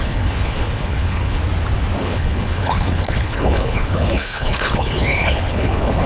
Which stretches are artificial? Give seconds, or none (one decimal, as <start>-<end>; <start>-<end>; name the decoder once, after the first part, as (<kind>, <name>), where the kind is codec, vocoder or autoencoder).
0.0-1.4 (codec, HILCodec); 2.0-6.1